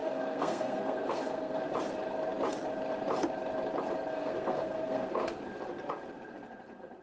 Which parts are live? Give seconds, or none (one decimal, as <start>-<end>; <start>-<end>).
1.6-4.1; 5.4-7.0